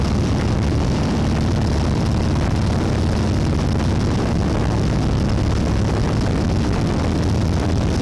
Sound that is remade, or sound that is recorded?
recorded